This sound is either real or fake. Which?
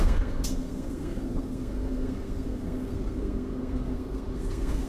fake